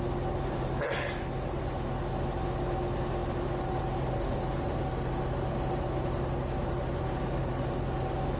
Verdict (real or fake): real